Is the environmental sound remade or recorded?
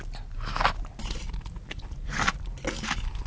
recorded